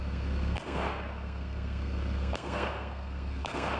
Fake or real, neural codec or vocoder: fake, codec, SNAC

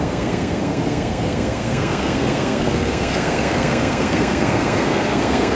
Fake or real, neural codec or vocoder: fake, codec, SNAC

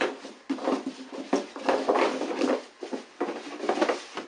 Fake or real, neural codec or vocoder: real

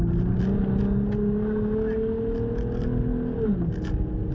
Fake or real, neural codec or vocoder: real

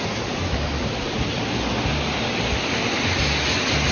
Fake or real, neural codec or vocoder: real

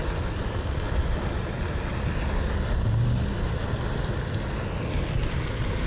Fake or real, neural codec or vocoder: real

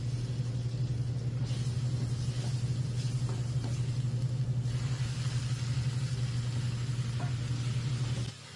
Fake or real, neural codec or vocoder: real